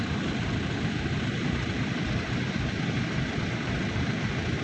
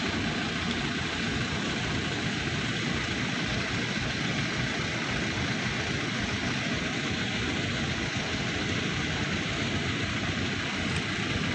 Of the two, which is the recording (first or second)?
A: second